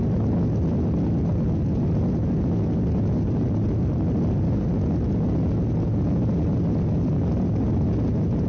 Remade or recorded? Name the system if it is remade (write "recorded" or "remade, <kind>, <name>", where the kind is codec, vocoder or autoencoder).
recorded